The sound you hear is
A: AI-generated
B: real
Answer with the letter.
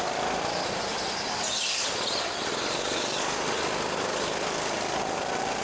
B